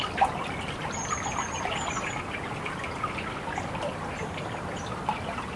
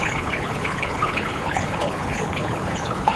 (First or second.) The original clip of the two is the first